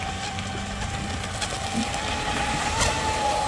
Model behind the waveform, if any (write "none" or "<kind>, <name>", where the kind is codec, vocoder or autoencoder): none